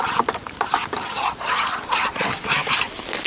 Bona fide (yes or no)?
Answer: yes